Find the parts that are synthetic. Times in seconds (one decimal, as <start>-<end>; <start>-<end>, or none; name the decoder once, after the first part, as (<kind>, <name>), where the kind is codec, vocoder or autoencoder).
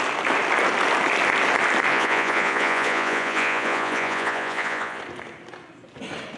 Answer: 1.9-5.0 (vocoder, Vocos)